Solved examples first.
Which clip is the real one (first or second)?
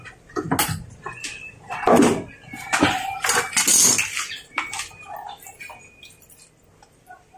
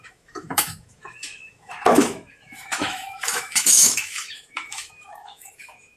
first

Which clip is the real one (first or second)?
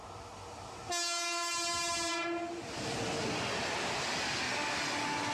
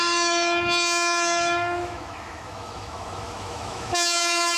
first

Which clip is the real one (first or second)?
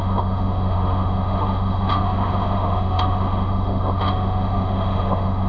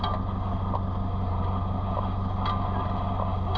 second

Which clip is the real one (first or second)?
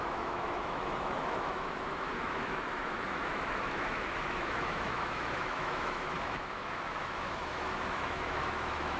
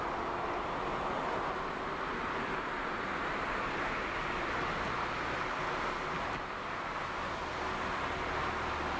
second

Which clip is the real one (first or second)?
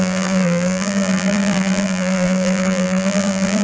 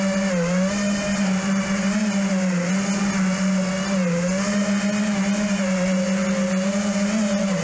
second